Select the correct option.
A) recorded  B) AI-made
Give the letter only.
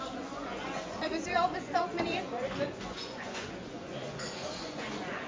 B